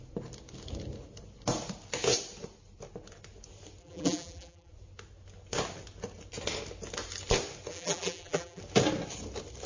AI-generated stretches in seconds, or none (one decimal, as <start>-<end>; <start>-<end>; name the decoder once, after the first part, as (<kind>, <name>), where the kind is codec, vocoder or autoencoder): 3.8-4.7 (vocoder, BigVGAN v2); 7.7-8.6